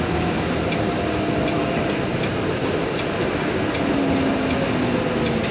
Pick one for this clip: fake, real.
real